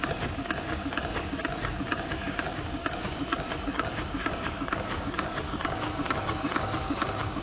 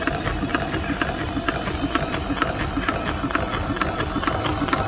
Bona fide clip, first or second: second